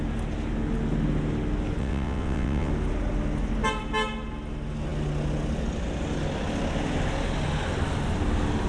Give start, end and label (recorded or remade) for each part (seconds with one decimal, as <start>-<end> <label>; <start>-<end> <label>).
0.0-1.8 recorded; 1.8-2.7 remade; 2.7-8.7 recorded

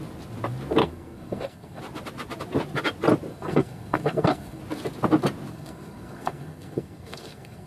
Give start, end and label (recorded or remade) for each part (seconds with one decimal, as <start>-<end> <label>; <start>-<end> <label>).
0.0-0.8 recorded; 0.8-1.8 remade; 1.8-3.3 recorded; 3.3-4.6 remade; 4.6-5.5 recorded; 5.5-7.7 remade

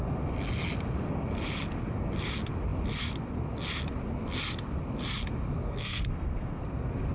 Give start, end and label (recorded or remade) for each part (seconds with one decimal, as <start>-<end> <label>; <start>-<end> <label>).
0.0-5.6 recorded; 5.6-6.6 remade; 6.6-7.1 recorded

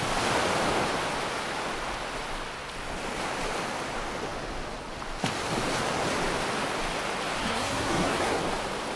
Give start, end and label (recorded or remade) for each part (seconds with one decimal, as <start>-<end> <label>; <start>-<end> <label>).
0.0-7.4 recorded; 7.4-8.4 remade; 8.4-9.0 recorded

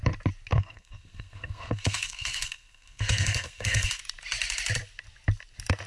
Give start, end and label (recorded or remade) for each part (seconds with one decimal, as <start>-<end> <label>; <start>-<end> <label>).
0.0-0.5 recorded; 0.5-4.0 remade; 4.0-5.9 recorded

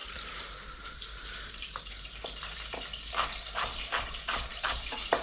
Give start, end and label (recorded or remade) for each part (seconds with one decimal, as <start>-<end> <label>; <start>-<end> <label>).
0.0-3.1 remade; 3.1-5.2 recorded

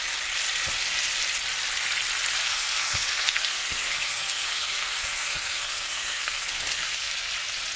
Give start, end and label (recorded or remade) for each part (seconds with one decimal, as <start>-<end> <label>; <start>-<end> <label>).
0.0-2.4 recorded; 2.4-7.1 remade; 7.1-7.8 recorded